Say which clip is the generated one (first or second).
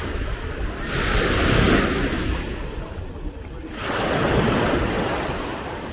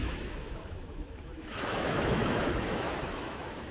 second